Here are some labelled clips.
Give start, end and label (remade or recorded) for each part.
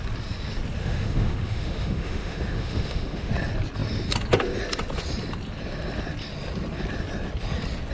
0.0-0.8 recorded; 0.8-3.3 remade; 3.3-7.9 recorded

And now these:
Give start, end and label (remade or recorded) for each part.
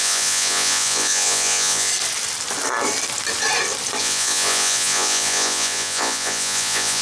0.0-1.9 remade; 1.9-4.0 recorded; 4.0-7.0 remade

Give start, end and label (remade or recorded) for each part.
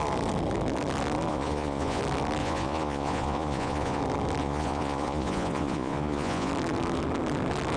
0.0-1.3 recorded; 1.3-2.0 remade; 2.0-2.4 recorded; 2.4-4.0 remade; 4.0-4.4 recorded; 4.4-6.5 remade; 6.5-7.8 recorded